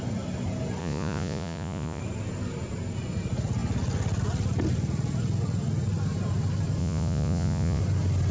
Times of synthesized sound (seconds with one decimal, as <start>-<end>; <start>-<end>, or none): 0.8-2.0; 6.8-7.8